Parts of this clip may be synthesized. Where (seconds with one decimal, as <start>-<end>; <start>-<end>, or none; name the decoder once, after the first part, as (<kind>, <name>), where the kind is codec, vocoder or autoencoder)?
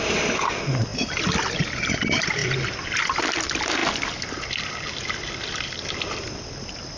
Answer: none